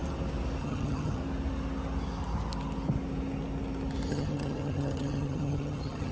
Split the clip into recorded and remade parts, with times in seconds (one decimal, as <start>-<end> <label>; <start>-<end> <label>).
0.0-0.6 recorded; 0.6-1.2 remade; 1.2-4.1 recorded; 4.1-6.1 remade